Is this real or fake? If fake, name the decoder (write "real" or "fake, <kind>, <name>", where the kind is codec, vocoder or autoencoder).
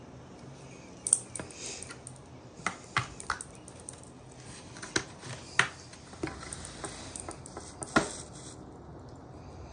real